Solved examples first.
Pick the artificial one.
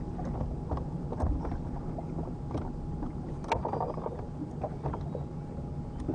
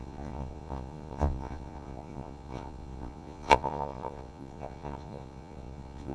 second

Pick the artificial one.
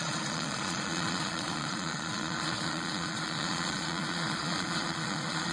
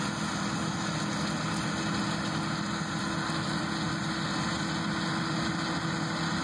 first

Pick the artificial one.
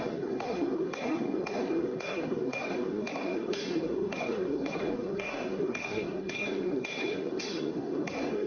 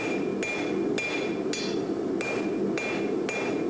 first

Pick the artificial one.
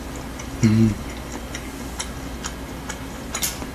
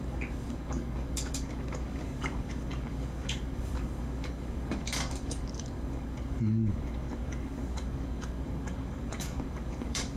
second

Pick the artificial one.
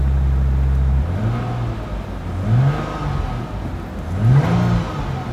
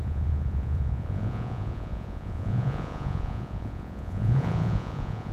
second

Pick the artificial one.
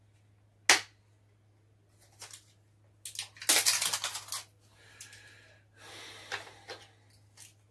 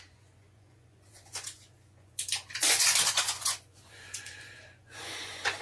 second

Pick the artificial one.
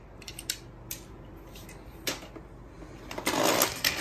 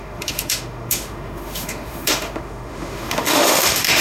second